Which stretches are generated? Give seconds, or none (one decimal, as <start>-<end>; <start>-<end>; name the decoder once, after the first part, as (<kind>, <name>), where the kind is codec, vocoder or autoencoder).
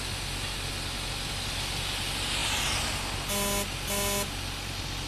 none